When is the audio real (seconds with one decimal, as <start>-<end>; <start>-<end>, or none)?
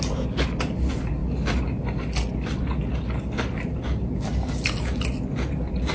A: 0.0-5.9